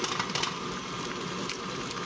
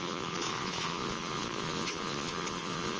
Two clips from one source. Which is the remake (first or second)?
second